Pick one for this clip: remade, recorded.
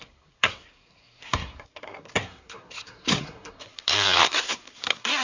remade